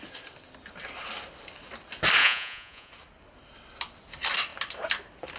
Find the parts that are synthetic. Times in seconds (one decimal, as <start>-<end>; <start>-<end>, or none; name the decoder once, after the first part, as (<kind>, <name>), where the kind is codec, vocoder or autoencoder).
2.2-2.9 (vocoder, Vocos)